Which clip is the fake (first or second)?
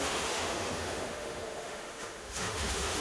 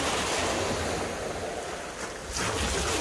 first